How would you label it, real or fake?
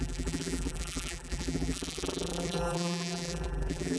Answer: fake